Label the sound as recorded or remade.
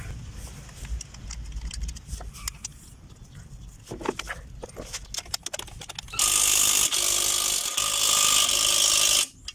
recorded